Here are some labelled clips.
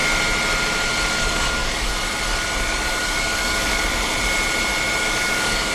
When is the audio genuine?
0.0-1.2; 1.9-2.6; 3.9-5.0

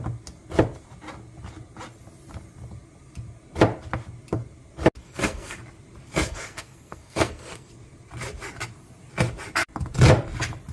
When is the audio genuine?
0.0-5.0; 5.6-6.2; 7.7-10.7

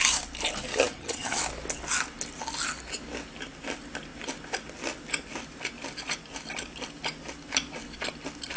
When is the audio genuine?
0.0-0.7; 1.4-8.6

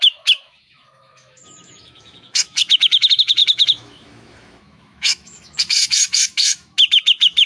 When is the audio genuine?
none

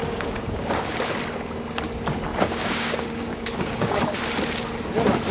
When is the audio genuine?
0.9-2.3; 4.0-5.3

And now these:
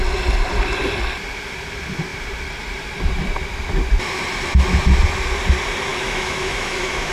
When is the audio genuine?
0.0-5.9

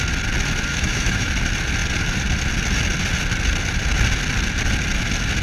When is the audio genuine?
0.0-0.7; 1.3-5.4

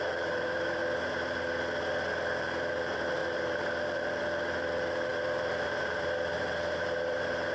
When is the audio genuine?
0.8-2.4